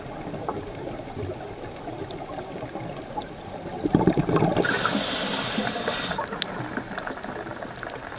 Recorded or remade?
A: recorded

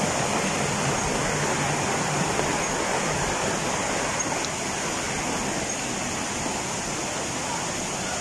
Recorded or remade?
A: recorded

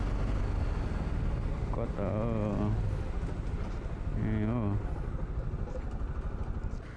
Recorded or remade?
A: recorded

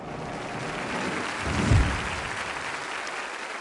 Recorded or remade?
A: recorded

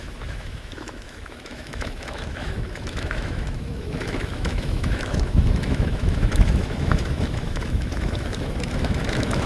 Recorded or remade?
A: remade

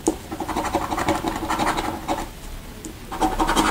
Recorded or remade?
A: recorded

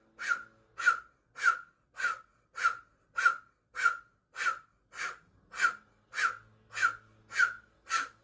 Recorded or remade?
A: recorded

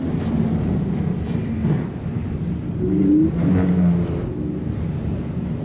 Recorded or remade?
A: recorded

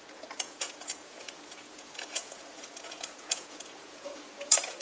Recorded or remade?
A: remade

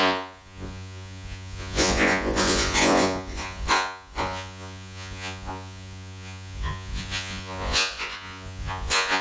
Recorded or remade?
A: remade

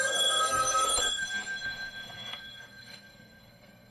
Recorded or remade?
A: remade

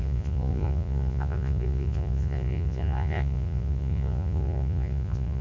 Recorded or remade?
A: remade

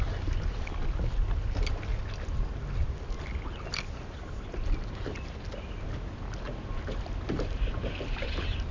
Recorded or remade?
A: recorded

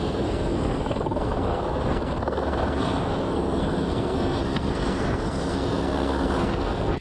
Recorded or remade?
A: remade